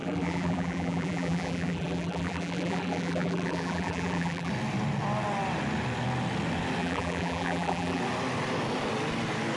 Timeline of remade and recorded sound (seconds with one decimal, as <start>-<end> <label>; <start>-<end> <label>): 0.0-4.5 remade; 4.5-6.8 recorded; 6.8-8.0 remade; 8.0-9.6 recorded